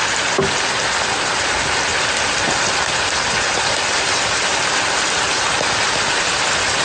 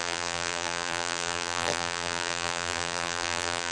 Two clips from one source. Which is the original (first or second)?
first